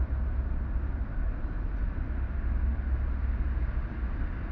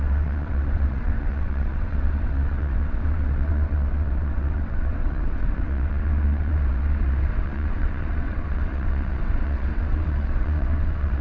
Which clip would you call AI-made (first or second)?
second